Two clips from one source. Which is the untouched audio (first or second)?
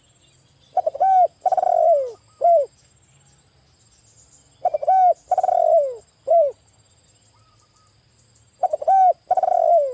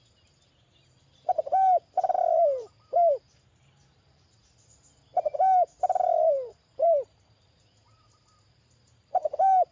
first